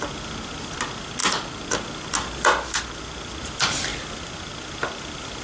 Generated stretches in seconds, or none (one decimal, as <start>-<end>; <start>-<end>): none